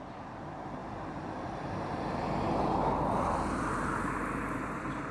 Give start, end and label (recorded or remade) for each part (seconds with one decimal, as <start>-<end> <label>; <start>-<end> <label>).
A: 0.0-5.1 recorded